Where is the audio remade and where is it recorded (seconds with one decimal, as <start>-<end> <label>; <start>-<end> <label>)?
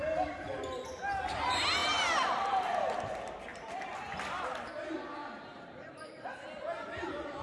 0.0-1.8 recorded; 1.8-3.0 remade; 3.0-5.5 recorded; 5.5-6.3 remade; 6.3-7.4 recorded